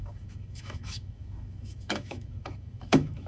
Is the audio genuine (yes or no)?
no